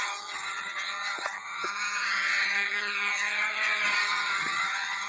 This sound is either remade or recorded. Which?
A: remade